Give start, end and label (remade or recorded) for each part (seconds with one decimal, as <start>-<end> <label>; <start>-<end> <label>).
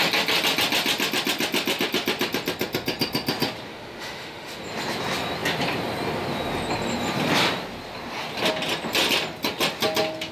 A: 0.0-3.7 recorded; 3.7-4.6 remade; 4.6-10.3 recorded